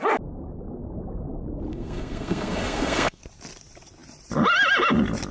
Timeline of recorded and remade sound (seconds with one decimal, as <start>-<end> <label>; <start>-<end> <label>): 0.0-1.7 recorded; 1.7-3.2 remade; 3.2-5.3 recorded